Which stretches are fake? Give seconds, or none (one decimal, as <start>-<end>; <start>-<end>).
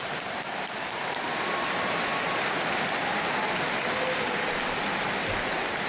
0.0-2.1